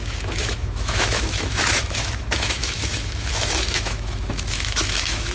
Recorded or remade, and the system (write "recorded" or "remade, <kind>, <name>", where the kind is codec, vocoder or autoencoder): remade, autoencoder, DAC-VAE